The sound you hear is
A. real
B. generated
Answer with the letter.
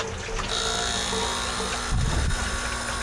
A